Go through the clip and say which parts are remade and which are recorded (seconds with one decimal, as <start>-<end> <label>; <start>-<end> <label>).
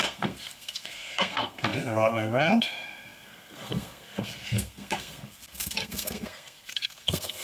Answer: 0.0-7.4 remade